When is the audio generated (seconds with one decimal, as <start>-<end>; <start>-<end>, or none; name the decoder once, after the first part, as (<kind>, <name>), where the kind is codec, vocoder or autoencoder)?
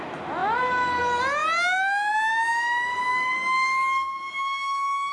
3.1-5.1 (codec, DAC)